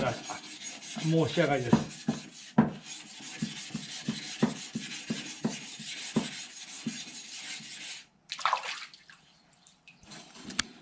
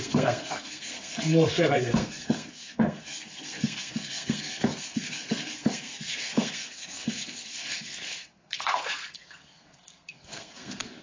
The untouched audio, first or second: first